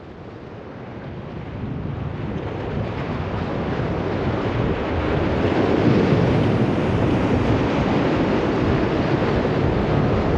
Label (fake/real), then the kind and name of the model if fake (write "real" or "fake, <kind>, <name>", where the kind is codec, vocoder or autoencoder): real